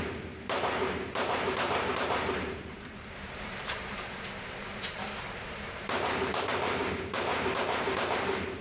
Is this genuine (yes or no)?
no